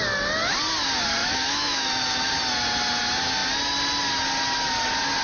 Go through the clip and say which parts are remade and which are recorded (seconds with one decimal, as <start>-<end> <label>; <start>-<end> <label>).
0.0-1.2 recorded; 1.2-2.4 remade; 2.4-5.2 recorded